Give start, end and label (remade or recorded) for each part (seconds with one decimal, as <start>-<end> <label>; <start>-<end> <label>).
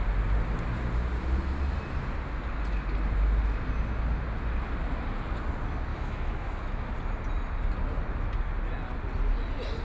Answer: 0.0-5.9 recorded; 5.9-6.9 remade; 6.9-9.8 recorded